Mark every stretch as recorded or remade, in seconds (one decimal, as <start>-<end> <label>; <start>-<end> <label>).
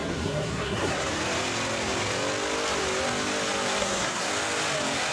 0.0-1.1 remade; 1.1-3.8 recorded; 3.8-4.3 remade; 4.3-5.1 recorded